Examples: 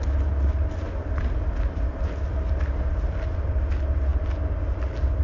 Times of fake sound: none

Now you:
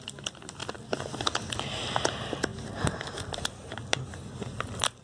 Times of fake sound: none